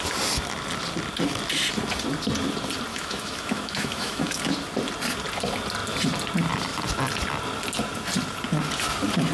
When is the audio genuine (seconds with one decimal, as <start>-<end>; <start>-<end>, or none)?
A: 0.0-2.9; 4.4-9.3